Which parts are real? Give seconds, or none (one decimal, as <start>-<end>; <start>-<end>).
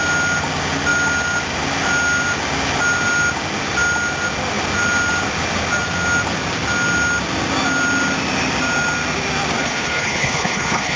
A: 0.0-9.6